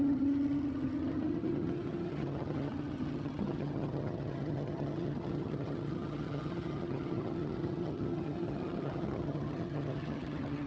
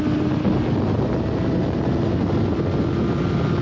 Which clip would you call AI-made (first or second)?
first